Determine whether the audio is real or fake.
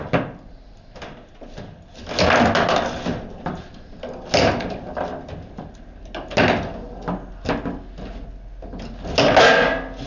real